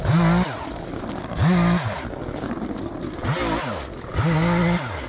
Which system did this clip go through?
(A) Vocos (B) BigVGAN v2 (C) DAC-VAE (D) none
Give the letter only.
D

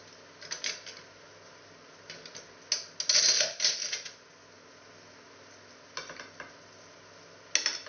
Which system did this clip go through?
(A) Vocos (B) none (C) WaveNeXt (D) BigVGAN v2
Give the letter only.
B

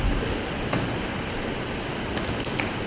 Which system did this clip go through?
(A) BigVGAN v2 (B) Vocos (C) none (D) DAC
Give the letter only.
C